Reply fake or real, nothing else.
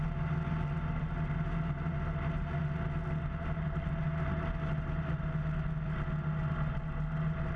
real